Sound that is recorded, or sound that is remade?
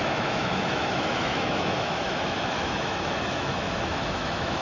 remade